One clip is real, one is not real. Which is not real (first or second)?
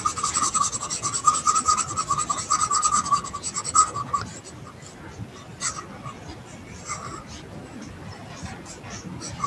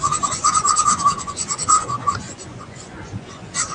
second